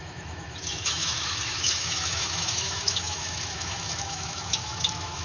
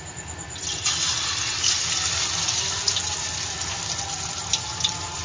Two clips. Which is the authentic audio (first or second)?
second